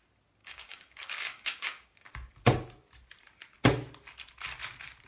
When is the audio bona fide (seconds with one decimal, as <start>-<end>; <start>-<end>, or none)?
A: 0.0-0.4; 2.3-5.1